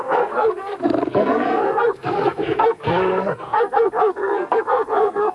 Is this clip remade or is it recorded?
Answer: remade